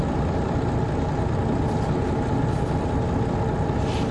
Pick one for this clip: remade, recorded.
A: recorded